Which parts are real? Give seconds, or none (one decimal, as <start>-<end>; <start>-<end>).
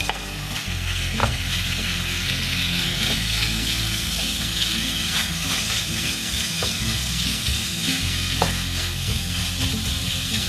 9.4-10.0